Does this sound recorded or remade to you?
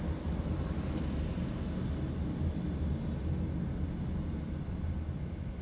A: recorded